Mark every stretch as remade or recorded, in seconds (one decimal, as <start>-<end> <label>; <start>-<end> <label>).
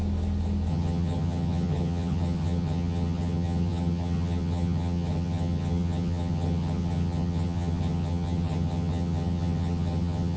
0.0-0.7 recorded; 0.7-10.4 remade